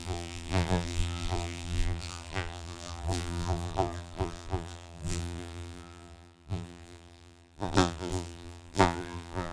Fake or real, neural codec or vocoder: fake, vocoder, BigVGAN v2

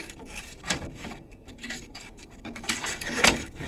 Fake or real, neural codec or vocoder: fake, codec, DAC